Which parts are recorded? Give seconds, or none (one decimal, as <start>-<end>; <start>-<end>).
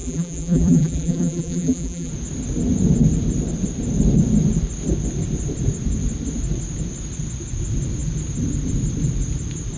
2.1-9.8